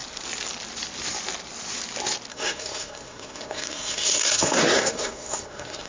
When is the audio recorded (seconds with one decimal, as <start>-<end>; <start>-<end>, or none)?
0.0-2.3